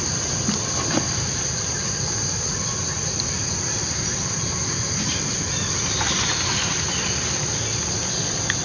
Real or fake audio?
real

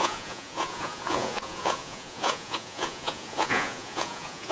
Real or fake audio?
fake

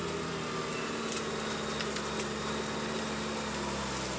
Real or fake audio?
real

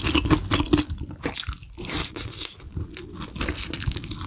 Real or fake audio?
real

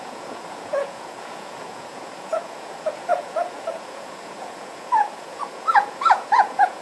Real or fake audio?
fake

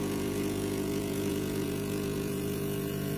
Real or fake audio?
fake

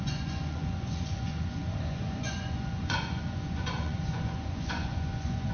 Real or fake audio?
fake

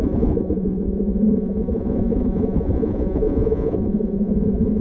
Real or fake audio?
fake